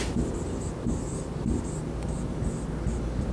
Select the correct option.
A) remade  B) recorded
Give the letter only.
B